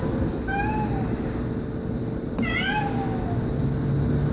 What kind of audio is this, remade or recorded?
recorded